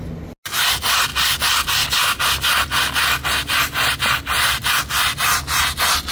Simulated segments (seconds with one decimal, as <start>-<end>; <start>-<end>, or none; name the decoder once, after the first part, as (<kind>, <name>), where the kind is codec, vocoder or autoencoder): none